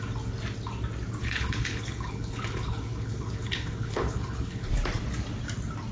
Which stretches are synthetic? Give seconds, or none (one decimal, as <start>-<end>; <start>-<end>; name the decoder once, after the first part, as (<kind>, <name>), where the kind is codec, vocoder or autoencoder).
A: 1.2-4.7 (codec, HILCodec)